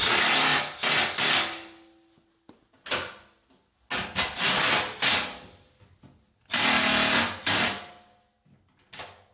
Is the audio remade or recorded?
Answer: recorded